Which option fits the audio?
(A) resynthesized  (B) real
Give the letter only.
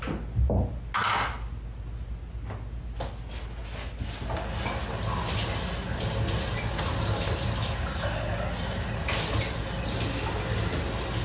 B